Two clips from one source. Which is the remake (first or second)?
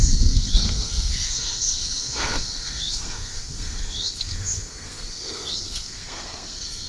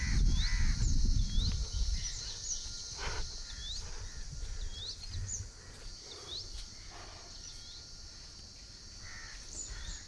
first